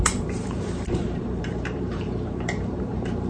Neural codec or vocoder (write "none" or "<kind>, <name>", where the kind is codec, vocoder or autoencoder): vocoder, BigVGAN v2